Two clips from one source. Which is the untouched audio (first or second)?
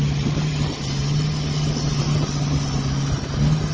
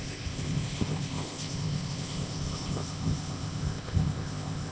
first